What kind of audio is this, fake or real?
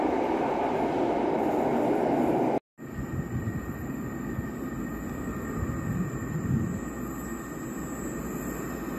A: real